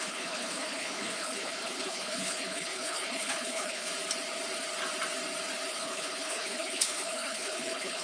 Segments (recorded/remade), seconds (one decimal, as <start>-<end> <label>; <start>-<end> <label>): 0.0-3.9 remade; 3.9-5.7 recorded; 5.7-8.0 remade